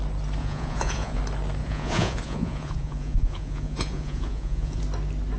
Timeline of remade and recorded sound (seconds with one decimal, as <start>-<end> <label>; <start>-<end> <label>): 0.0-0.4 recorded; 0.4-1.2 remade; 1.2-1.6 recorded; 1.6-4.8 remade; 4.8-5.4 recorded

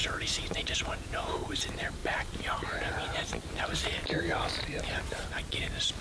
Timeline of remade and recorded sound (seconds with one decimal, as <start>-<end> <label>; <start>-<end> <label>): 0.0-1.3 remade; 1.3-6.0 recorded

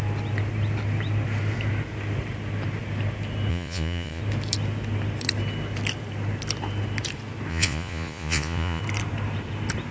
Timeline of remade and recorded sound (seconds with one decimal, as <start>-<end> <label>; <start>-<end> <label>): 0.0-3.5 recorded; 3.5-4.2 remade; 4.2-7.5 recorded; 7.5-8.8 remade; 8.8-9.9 recorded